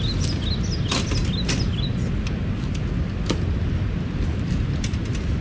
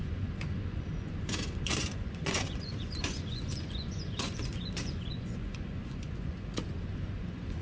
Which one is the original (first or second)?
first